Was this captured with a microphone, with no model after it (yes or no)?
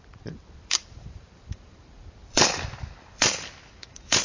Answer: no